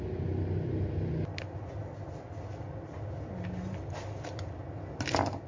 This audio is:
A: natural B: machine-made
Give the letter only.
A